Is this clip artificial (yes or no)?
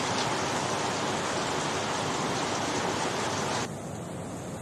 no